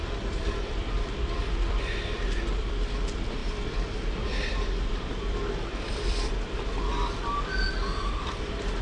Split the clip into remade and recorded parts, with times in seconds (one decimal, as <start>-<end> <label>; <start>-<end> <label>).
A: 0.0-6.9 remade; 6.9-8.1 recorded; 8.1-8.8 remade